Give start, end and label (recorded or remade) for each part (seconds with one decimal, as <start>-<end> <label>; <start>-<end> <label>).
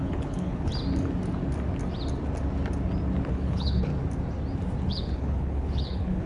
0.0-0.7 remade; 0.7-3.3 recorded; 3.3-3.9 remade; 3.9-4.9 recorded; 4.9-6.3 remade